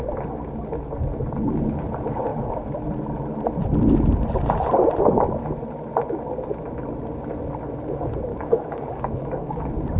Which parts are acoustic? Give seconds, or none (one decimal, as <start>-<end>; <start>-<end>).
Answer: 0.0-8.3; 9.6-10.0